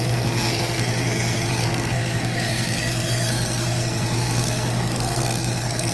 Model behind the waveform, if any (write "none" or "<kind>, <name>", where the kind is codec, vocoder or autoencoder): codec, SNAC